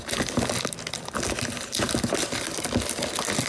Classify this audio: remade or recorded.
recorded